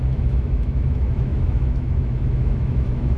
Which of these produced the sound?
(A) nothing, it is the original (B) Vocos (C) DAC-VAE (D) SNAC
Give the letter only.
C